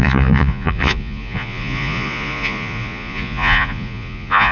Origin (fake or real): fake